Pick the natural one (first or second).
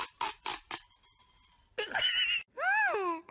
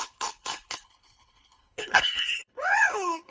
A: first